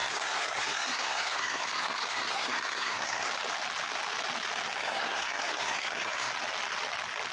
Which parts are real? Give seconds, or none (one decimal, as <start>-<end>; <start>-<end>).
3.3-4.8; 6.3-7.3